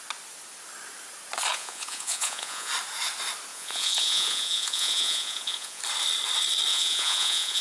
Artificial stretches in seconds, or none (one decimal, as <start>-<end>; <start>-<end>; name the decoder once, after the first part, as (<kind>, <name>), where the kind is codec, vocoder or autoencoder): 1.5-2.7 (vocoder, Vocos); 3.5-5.8; 6.7-7.6